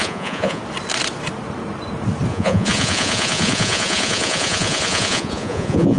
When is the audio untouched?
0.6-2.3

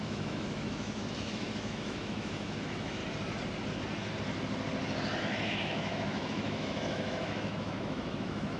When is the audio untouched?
3.0-5.2

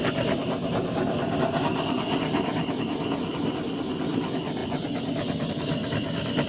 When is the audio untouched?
0.0-6.5

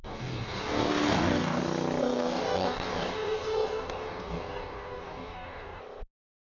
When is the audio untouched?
1.6-2.0; 5.8-6.4

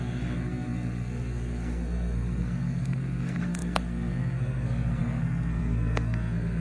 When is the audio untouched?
none

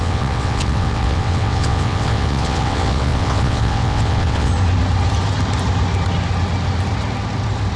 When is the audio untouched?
4.5-7.8

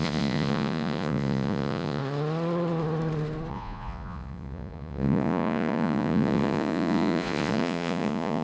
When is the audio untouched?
2.0-3.5

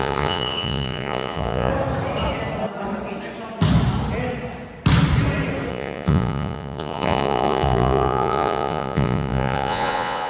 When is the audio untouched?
1.7-5.7